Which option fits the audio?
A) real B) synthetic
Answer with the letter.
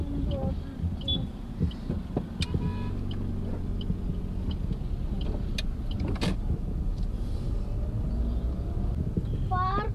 A